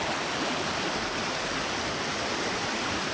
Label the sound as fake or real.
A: real